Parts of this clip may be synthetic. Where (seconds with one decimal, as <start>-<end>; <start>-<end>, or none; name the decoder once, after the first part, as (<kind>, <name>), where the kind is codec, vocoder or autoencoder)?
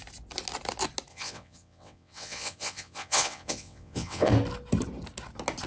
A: 1.1-4.3 (vocoder, WaveNeXt)